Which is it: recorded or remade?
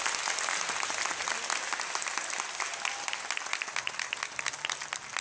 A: recorded